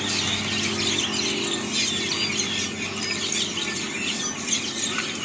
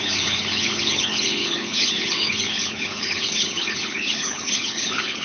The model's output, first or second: second